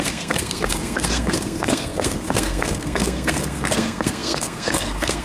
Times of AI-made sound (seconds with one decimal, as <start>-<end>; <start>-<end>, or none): 0.0-5.2

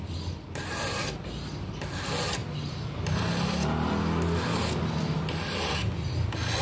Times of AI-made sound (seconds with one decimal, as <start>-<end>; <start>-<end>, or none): none

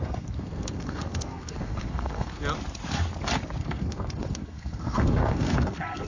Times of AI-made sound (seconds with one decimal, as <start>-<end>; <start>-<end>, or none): 0.0-2.4; 3.6-6.1

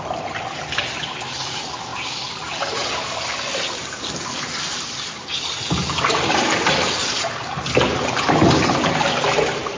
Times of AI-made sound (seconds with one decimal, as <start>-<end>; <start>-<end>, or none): none